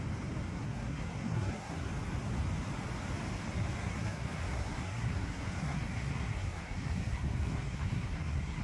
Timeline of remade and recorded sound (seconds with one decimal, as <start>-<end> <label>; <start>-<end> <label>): 0.0-0.5 recorded; 0.5-1.9 remade; 1.9-3.8 recorded; 3.8-8.6 remade